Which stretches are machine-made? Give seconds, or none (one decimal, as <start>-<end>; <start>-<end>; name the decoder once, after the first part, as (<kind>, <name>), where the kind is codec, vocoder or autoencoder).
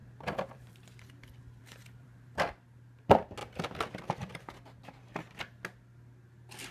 0.0-2.4 (vocoder, BigVGAN v2)